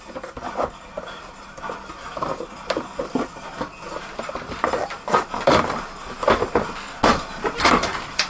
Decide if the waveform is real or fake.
real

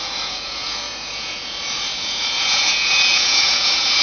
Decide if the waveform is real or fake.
fake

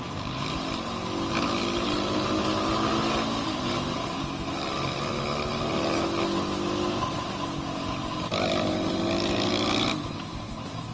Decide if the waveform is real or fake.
real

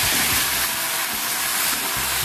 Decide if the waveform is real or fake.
real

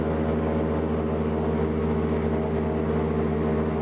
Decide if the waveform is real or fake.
real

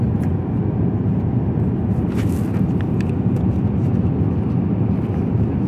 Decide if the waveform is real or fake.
real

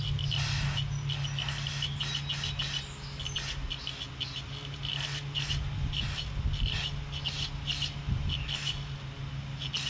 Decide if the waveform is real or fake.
real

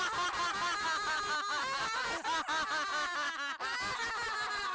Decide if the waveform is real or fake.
real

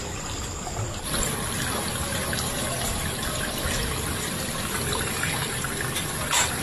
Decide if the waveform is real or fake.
fake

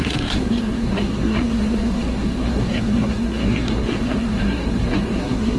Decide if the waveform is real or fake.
fake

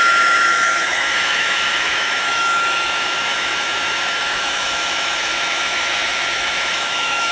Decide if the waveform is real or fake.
fake